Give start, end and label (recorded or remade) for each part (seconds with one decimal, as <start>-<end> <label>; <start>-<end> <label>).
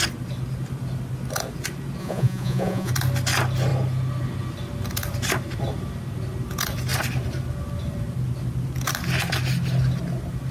0.0-2.0 recorded; 2.0-2.9 remade; 2.9-10.5 recorded